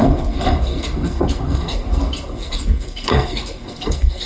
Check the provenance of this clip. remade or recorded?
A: remade